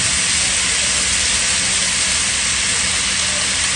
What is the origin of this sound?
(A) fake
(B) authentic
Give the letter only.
B